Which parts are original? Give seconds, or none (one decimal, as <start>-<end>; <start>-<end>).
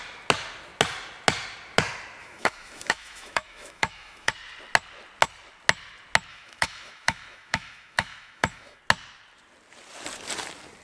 0.0-2.2; 4.3-6.3; 8.8-10.8